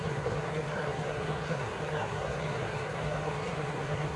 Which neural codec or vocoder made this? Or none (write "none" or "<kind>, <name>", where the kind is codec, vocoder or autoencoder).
codec, SNAC